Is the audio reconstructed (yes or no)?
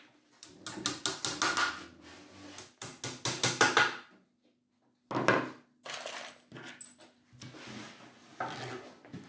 no